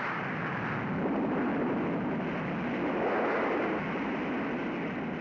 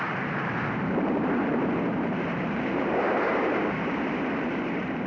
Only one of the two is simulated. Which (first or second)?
second